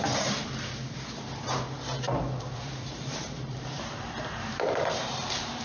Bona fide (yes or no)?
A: no